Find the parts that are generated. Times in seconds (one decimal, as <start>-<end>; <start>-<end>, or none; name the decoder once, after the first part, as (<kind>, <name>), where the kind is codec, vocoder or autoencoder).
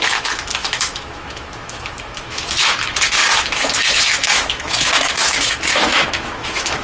0.0-6.8 (autoencoder, DAC-VAE)